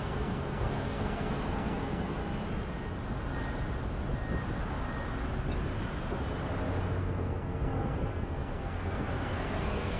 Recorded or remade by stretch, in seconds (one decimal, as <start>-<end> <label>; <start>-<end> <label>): 0.0-2.2 remade; 2.2-7.0 recorded; 7.0-10.0 remade